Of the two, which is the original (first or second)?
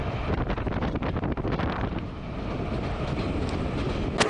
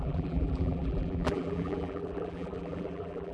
first